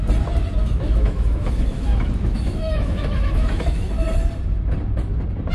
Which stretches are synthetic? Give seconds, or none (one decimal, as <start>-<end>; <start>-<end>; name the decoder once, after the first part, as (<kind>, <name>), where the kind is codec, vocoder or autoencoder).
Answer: 0.6-3.9 (autoencoder, DAC-VAE)